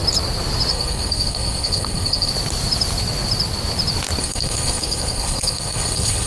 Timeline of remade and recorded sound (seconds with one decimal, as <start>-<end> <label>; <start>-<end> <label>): 0.0-0.7 recorded; 0.7-2.3 remade; 2.3-4.2 recorded; 4.2-6.3 remade